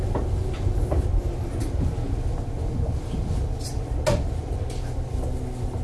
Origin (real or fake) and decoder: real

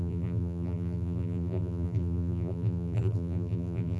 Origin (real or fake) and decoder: fake, vocoder, BigVGAN v2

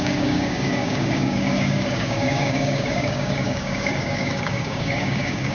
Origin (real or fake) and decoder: fake, codec, DAC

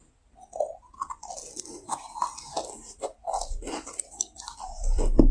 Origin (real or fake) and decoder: real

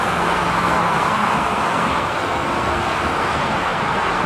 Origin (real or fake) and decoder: fake, codec, SNAC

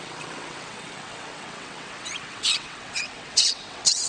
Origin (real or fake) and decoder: fake, vocoder, WaveNeXt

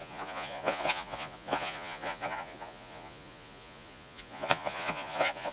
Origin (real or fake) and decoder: fake, vocoder, Vocos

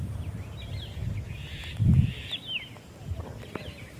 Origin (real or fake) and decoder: real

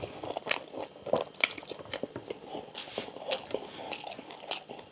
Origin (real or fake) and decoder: real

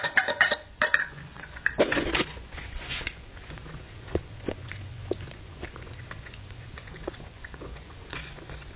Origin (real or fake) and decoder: fake, vocoder, Vocos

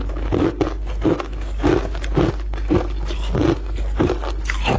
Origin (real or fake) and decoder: real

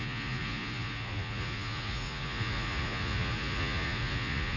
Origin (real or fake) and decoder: fake, vocoder, Vocos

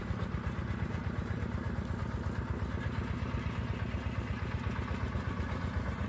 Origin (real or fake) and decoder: real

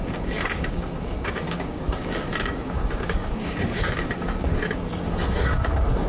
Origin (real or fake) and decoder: fake, codec, DAC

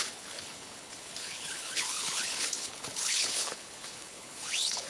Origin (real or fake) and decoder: fake, codec, HILCodec